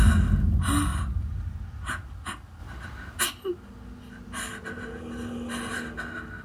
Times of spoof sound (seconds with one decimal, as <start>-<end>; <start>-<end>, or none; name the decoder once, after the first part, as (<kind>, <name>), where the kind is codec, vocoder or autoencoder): 0.9-1.6 (vocoder, BigVGAN v2)